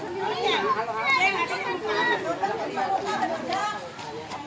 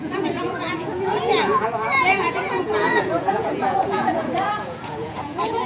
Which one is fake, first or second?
second